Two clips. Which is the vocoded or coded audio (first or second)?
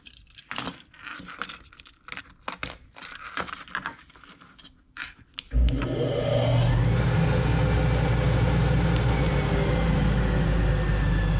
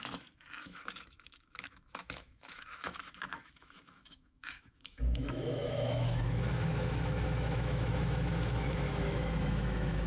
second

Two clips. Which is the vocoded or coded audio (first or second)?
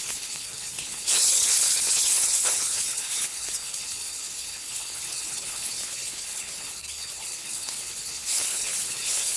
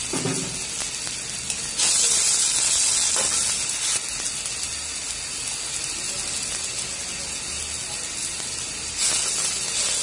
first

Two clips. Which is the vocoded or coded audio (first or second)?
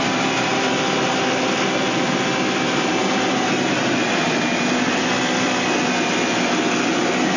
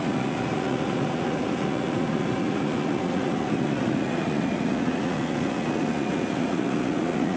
second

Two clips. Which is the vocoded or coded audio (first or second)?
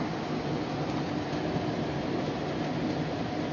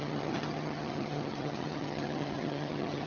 second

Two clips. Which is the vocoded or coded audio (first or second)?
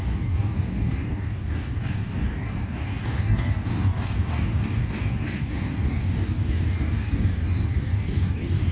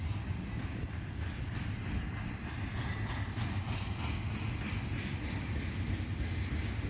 first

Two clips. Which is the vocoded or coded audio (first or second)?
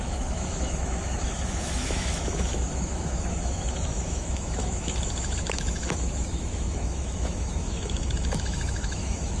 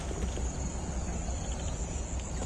first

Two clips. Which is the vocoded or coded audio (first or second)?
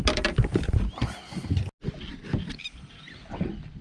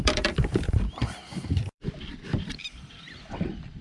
second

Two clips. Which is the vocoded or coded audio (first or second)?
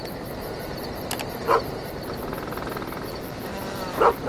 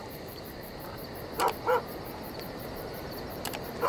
second